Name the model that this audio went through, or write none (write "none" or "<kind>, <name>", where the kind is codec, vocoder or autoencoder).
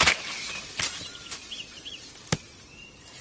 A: vocoder, BigVGAN v2